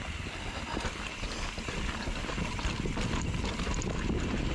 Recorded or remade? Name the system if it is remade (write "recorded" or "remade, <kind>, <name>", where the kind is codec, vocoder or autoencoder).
recorded